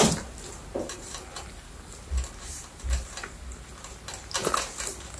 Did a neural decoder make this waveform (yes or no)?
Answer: no